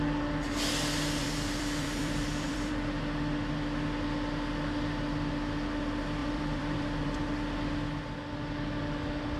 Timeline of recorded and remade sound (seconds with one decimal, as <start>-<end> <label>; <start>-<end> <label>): 0.0-1.2 recorded; 1.2-3.0 remade; 3.0-6.2 recorded; 6.2-7.2 remade; 7.2-9.4 recorded